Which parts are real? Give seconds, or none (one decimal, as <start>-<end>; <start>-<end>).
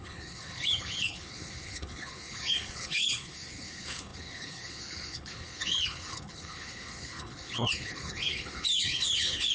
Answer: none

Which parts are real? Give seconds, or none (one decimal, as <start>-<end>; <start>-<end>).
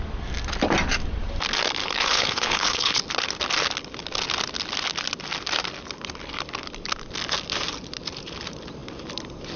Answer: 0.0-1.8; 3.0-9.6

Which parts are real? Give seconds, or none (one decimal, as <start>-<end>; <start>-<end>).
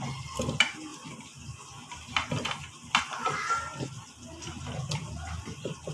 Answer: 0.0-5.9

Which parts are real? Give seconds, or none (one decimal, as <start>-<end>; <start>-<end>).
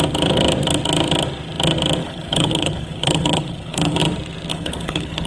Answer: 0.0-2.0; 4.0-4.5